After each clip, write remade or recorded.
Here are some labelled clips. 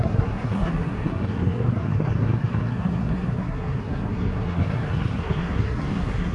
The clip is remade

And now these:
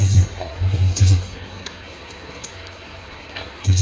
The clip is remade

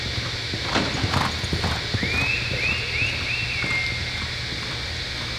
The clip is recorded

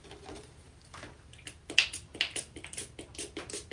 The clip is recorded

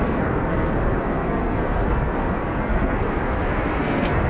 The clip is remade